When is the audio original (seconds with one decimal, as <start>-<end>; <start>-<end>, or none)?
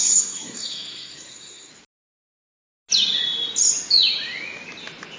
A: 1.7-5.2